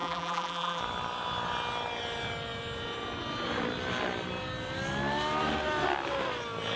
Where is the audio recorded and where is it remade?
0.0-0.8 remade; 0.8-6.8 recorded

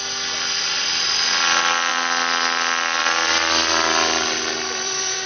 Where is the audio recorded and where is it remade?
0.0-0.8 recorded; 0.8-1.9 remade; 1.9-3.0 recorded; 3.0-5.3 remade

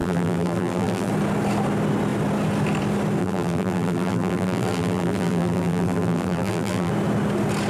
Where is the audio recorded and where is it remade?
0.0-1.1 remade; 1.1-3.2 recorded; 3.2-6.9 remade; 6.9-7.7 recorded

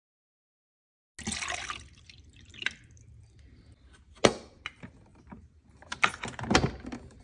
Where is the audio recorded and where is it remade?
0.0-5.1 recorded; 5.1-6.1 remade; 6.1-7.2 recorded